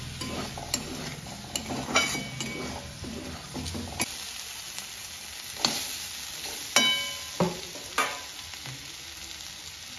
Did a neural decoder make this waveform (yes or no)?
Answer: no